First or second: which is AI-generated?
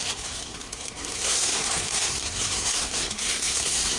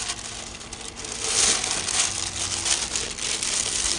first